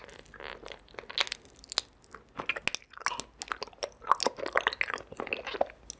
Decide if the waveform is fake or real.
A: real